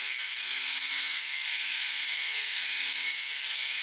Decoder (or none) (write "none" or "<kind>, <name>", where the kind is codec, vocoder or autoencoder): codec, SNAC